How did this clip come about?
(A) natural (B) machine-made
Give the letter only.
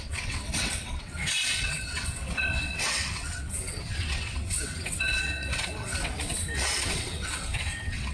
B